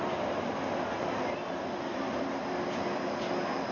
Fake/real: real